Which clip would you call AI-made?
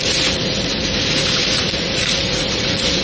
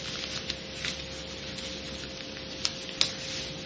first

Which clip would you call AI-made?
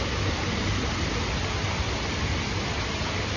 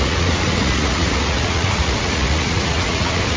second